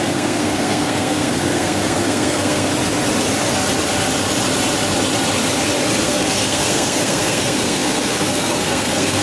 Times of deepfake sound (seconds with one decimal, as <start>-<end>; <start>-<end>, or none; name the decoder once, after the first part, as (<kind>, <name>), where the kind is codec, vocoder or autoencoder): 0.0-2.7 (codec, SNAC); 6.0-9.2